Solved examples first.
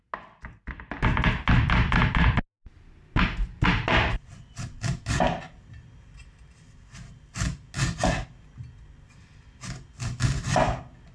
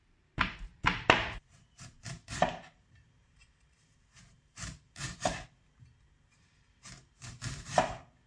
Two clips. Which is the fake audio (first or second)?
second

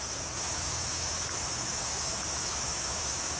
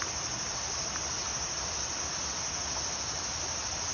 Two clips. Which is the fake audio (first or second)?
first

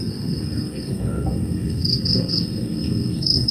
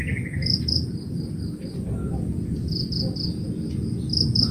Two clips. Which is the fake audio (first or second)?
first